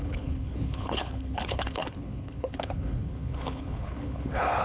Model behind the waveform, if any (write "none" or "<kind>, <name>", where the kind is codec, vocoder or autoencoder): codec, HILCodec